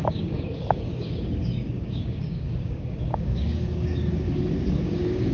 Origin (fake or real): fake